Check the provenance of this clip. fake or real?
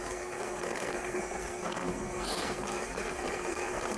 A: fake